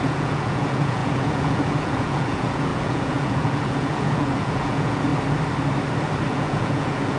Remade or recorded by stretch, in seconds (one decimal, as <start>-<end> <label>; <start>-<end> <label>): 0.0-5.1 remade; 5.1-6.3 recorded; 6.3-7.2 remade